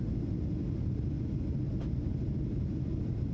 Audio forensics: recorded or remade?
recorded